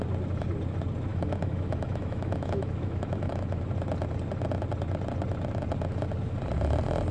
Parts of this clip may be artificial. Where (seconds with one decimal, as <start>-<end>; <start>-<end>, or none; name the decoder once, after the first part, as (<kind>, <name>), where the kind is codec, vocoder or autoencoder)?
1.1-3.6 (autoencoder, DAC-VAE)